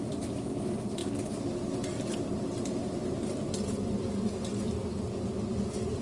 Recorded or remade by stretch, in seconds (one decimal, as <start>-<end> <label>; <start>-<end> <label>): 0.0-6.0 recorded